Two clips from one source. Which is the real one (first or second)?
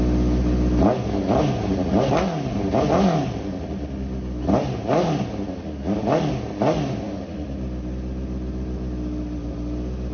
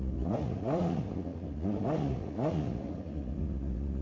first